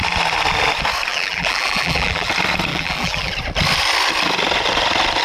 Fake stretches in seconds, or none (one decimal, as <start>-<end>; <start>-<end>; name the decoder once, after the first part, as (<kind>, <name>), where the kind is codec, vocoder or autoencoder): 1.1-2.3 (vocoder, BigVGAN v2); 2.7-3.3